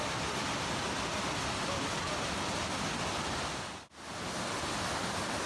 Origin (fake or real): real